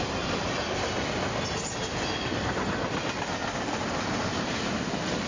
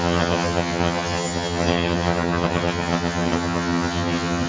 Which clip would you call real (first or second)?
first